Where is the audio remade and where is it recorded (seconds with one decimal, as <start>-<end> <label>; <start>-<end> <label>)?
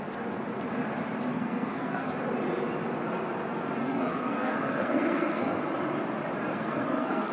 0.0-1.3 recorded; 1.3-2.1 remade; 2.1-3.8 recorded; 3.8-5.6 remade; 5.6-6.5 recorded; 6.5-7.3 remade